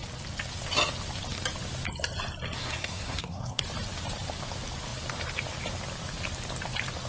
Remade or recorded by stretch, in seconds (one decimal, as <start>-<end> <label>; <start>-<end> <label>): 0.0-2.6 recorded; 2.6-3.6 remade; 3.6-7.1 recorded